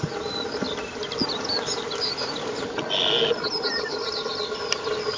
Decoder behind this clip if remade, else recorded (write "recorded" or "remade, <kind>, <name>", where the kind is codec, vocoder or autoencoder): recorded